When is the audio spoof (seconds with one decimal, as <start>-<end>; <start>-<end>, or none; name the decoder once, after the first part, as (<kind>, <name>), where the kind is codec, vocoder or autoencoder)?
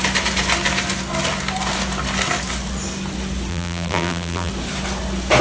3.5-4.5 (vocoder, BigVGAN v2)